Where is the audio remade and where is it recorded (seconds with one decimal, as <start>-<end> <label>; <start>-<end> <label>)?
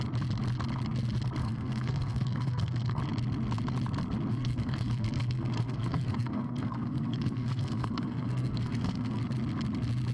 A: 0.0-1.4 recorded; 1.4-3.0 remade; 3.0-4.3 recorded; 4.3-9.2 remade; 9.2-10.1 recorded